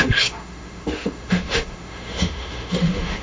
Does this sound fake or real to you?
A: fake